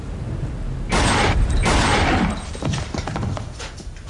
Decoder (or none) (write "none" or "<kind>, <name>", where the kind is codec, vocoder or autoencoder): none